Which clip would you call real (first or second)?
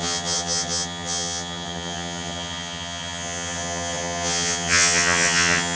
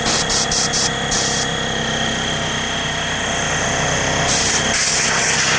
second